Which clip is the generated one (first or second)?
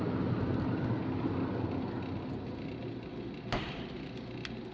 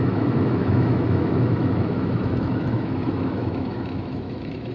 second